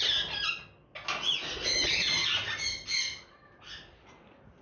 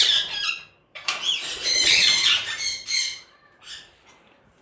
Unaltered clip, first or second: first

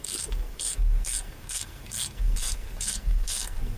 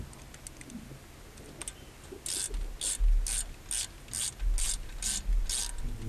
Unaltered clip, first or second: second